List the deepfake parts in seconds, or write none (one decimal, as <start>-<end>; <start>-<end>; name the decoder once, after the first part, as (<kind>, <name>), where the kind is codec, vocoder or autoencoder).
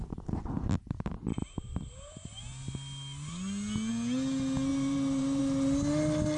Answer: 4.7-5.4 (vocoder, BigVGAN v2)